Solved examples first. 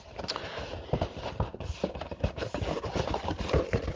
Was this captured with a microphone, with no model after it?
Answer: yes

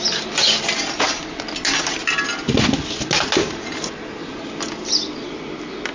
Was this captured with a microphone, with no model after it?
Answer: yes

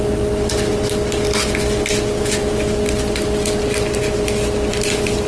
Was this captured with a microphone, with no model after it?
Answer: yes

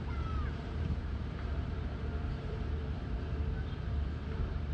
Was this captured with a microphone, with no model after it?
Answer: no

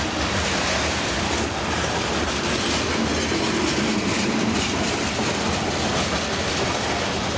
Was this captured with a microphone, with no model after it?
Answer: yes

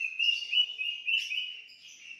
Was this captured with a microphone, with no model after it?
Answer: yes